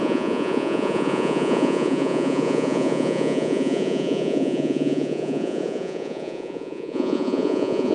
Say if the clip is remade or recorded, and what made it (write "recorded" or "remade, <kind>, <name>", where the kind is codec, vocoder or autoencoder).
remade, vocoder, Vocos